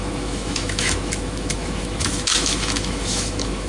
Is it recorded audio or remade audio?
remade